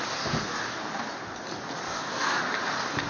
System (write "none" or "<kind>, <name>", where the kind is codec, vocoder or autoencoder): none